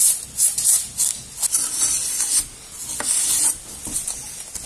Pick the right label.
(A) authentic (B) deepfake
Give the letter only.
A